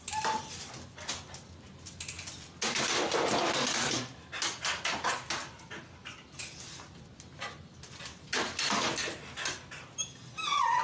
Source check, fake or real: real